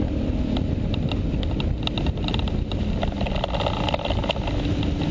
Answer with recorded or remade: recorded